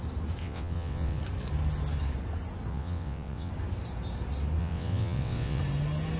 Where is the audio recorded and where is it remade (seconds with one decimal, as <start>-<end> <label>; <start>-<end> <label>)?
0.0-0.4 recorded; 0.4-1.2 remade; 1.2-2.7 recorded; 2.7-3.5 remade; 3.5-4.6 recorded; 4.6-5.6 remade; 5.6-6.2 recorded

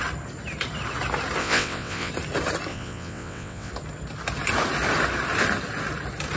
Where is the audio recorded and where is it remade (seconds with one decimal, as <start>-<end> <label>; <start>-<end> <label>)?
0.0-1.4 recorded; 1.4-2.1 remade; 2.1-2.7 recorded; 2.7-3.7 remade; 3.7-6.4 recorded

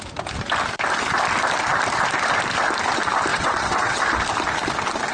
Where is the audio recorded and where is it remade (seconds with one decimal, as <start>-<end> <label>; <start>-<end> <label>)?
0.0-3.3 recorded; 3.3-4.0 remade; 4.0-5.1 recorded

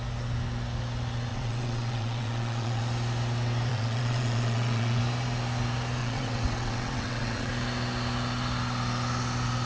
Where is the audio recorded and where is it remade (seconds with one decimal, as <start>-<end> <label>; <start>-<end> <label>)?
0.0-1.3 recorded; 1.3-2.8 remade; 2.8-3.7 recorded; 3.7-5.0 remade; 5.0-6.0 recorded; 6.0-7.5 remade; 7.5-9.7 recorded

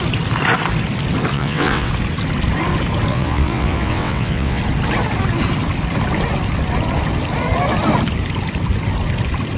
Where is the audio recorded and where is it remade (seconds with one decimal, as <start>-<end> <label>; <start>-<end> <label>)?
0.0-1.3 recorded; 1.3-1.9 remade; 1.9-3.1 recorded; 3.1-4.6 remade; 4.6-9.6 recorded